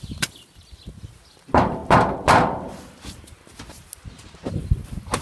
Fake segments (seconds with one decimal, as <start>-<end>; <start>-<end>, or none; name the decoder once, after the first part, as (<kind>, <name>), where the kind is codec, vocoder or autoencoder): none